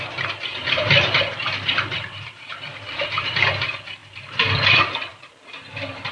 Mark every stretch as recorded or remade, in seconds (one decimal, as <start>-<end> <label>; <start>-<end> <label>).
0.0-0.5 recorded; 0.5-3.4 remade; 3.4-4.0 recorded; 4.0-5.3 remade; 5.3-6.1 recorded